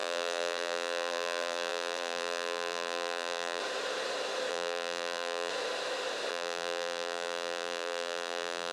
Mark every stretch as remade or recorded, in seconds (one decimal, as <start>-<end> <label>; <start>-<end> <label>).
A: 0.0-3.6 remade; 3.6-4.5 recorded; 4.5-5.5 remade; 5.5-6.3 recorded; 6.3-8.7 remade